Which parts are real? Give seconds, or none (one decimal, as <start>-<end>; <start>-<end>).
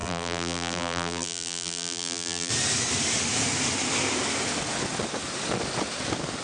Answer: 2.5-6.4